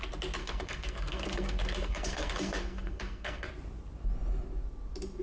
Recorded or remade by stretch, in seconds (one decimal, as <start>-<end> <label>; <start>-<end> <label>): 0.0-0.4 recorded; 0.4-3.5 remade; 3.5-5.2 recorded